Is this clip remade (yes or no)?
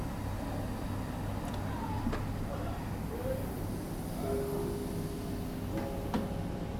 no